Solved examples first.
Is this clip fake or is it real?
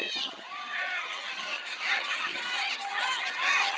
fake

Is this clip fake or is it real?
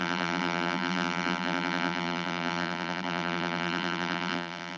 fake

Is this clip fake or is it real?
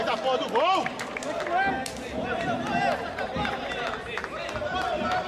real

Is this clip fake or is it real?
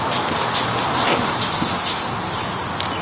real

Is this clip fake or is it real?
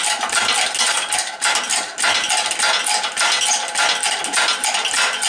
real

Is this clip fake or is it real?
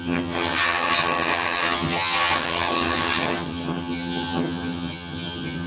fake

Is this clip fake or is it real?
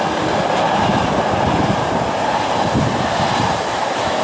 real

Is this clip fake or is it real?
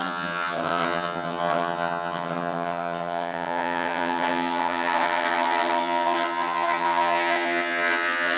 fake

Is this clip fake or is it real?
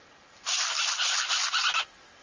real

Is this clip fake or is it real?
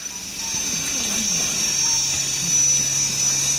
real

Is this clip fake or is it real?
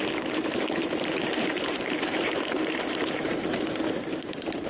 fake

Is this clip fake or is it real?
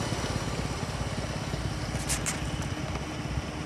real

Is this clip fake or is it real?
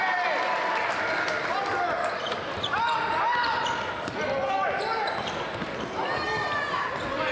real